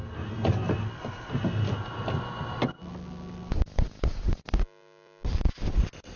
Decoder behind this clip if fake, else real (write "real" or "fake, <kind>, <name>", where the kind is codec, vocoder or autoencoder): real